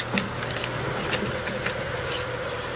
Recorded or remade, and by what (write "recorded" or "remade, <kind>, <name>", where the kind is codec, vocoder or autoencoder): recorded